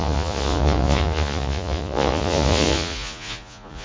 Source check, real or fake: fake